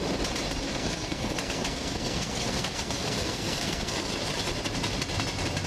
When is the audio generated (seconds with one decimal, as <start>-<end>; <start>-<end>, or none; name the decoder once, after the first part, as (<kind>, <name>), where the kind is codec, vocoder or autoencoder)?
0.7-4.1 (codec, SNAC)